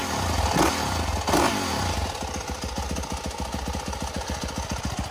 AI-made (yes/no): no